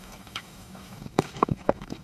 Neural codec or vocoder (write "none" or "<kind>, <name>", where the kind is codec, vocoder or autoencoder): codec, DAC